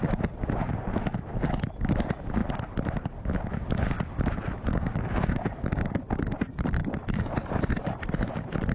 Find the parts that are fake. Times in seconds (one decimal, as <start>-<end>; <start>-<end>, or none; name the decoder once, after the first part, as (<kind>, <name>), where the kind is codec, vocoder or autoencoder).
4.7-6.0 (codec, DAC); 6.8-7.3